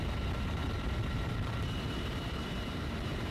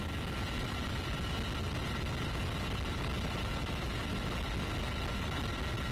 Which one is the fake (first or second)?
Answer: first